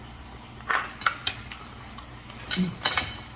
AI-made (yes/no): no